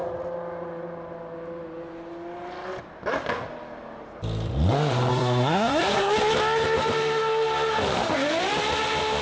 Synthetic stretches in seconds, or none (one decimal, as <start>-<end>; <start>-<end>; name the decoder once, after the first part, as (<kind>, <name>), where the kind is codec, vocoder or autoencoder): 5.1-6.1 (codec, SNAC)